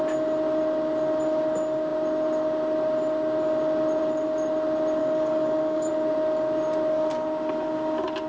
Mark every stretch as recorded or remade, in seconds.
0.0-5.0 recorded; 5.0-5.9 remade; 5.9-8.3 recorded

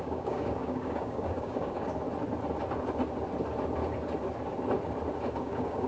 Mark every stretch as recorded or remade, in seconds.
0.0-1.9 remade; 1.9-5.4 recorded; 5.4-5.9 remade

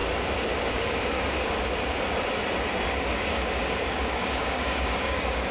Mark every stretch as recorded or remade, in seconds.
0.0-0.7 recorded; 0.7-1.6 remade; 1.6-3.3 recorded; 3.3-5.5 remade

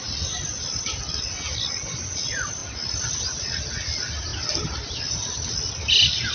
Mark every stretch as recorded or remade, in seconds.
0.0-6.3 recorded